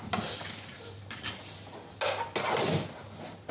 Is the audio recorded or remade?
recorded